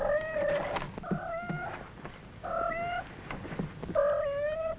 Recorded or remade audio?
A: recorded